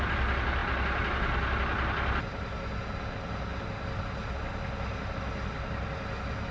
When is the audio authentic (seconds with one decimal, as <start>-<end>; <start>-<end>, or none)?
0.0-6.5